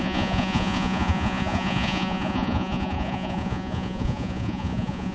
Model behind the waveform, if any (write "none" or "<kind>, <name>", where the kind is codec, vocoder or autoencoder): vocoder, Vocos